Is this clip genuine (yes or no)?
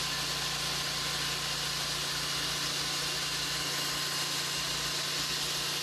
yes